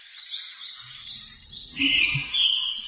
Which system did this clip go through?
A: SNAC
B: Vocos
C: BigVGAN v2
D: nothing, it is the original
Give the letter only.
D